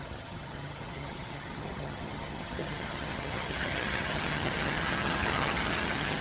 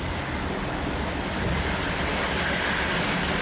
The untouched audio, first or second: second